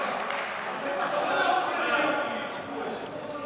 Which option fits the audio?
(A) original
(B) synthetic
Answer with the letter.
A